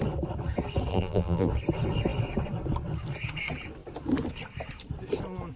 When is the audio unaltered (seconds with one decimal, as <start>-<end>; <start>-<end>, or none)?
0.0-0.9; 1.5-5.6